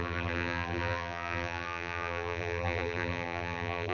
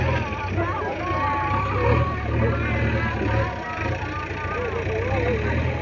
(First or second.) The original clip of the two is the second